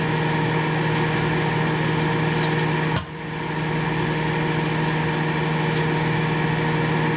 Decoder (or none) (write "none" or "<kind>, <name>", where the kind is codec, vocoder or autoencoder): none